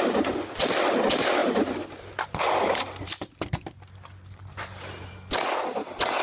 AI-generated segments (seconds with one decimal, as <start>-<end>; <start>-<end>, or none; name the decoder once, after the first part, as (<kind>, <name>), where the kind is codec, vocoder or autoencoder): none